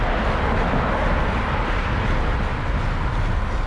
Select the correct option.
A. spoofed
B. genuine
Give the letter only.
B